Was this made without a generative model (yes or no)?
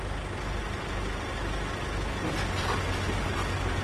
yes